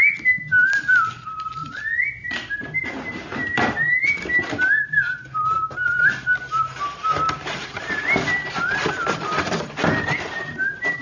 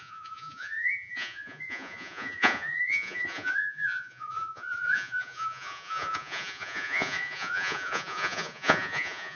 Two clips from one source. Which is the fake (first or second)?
second